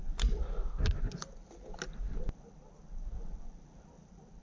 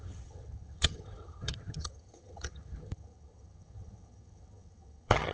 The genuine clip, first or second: first